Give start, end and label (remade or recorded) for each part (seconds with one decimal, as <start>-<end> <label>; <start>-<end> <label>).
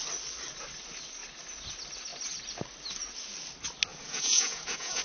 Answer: 0.0-3.9 recorded; 3.9-5.0 remade